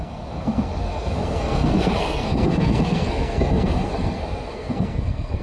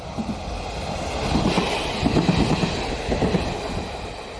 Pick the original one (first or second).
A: second